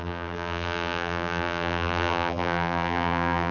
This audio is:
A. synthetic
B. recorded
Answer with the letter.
A